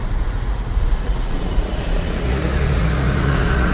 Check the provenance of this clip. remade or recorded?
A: remade